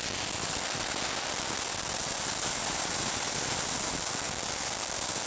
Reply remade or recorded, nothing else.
recorded